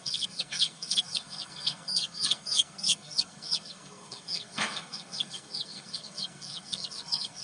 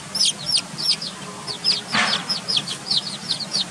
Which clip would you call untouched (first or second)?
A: second